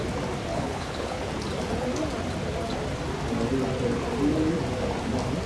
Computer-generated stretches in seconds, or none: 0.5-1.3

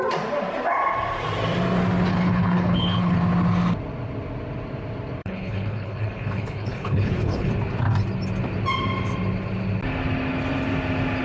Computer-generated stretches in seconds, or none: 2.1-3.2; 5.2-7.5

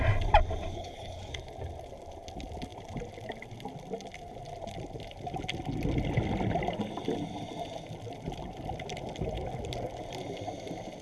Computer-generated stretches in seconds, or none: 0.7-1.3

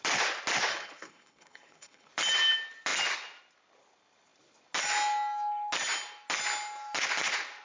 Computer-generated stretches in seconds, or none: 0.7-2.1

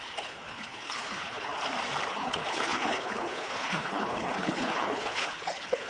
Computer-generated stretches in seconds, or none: 0.0-1.5; 2.1-5.9

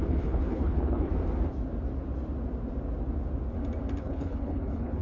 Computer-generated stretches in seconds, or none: 0.0-1.1; 4.0-5.0

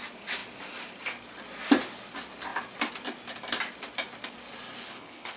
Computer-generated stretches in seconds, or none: 4.8-5.4

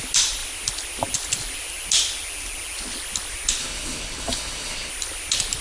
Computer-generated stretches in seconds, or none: 3.6-4.9